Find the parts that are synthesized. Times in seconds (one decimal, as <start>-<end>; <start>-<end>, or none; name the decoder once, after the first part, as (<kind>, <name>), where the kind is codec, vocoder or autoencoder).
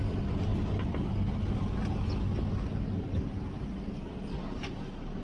none